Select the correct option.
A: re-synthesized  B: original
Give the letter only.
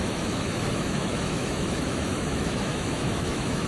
A